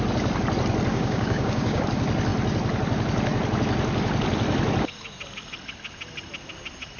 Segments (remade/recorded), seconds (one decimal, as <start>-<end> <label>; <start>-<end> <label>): 0.0-0.9 recorded; 0.9-1.8 remade; 1.8-7.0 recorded